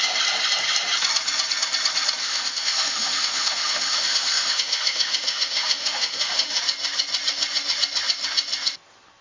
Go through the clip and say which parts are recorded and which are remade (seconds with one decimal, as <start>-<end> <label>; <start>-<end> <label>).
0.0-2.2 recorded; 2.2-6.6 remade; 6.6-9.2 recorded